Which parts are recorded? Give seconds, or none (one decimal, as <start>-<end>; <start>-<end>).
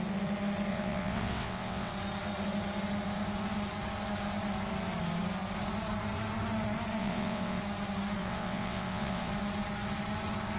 0.0-0.7; 1.9-7.0; 7.6-8.2; 9.3-10.6